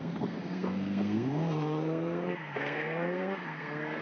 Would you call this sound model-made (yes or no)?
yes